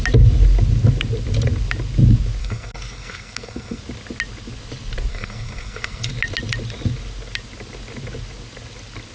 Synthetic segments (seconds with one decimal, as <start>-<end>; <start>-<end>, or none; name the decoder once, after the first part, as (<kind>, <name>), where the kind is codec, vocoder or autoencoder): 2.4-3.8 (codec, SNAC); 5.1-6.1